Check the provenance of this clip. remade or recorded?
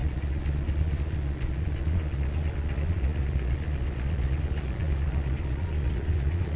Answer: remade